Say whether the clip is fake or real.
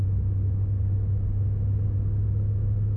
real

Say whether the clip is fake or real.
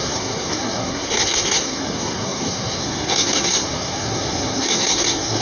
fake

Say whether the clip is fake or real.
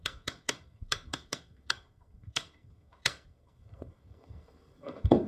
fake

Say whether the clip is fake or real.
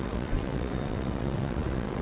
fake